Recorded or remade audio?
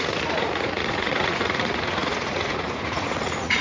remade